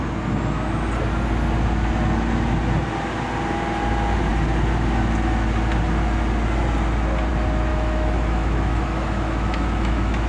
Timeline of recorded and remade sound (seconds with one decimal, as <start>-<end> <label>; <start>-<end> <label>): 0.0-7.7 recorded; 7.7-10.3 remade